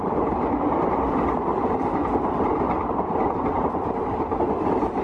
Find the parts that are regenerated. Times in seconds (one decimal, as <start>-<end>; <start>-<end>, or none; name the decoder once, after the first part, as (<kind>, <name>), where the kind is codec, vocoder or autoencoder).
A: none